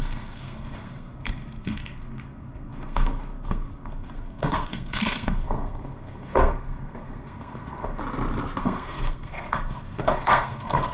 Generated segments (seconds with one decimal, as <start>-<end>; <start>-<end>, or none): 0.0-8.0; 8.6-10.9